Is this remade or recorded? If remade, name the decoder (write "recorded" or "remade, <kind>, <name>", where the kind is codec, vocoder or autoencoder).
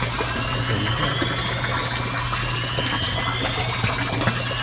recorded